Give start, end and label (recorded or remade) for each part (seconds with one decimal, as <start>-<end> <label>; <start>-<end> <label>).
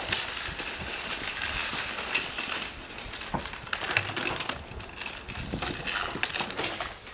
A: 0.0-7.1 recorded